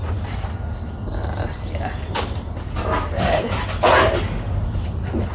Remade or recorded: recorded